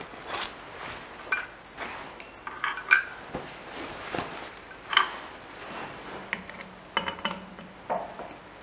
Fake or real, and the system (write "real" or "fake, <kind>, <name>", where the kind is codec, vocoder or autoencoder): real